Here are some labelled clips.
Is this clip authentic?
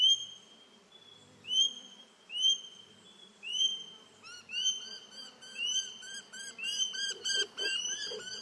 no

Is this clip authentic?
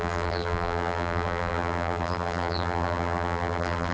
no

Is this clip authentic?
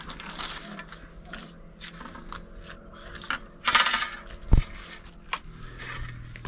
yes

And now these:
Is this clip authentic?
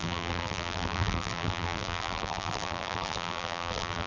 no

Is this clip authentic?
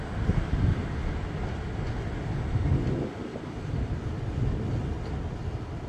yes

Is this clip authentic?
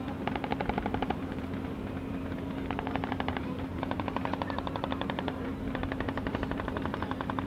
no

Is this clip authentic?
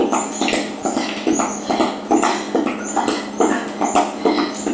yes